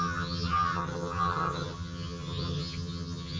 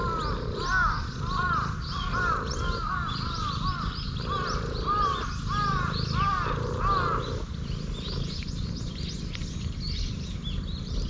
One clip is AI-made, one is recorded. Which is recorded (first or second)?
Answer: second